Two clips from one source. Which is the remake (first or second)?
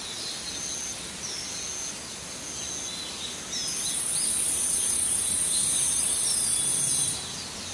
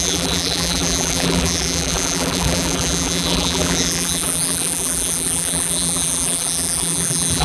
second